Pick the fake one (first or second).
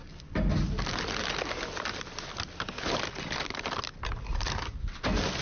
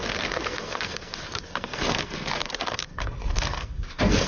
second